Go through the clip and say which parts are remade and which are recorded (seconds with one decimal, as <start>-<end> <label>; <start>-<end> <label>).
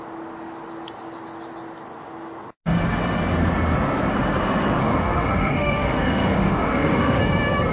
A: 0.0-4.8 recorded; 4.8-7.2 remade; 7.2-7.7 recorded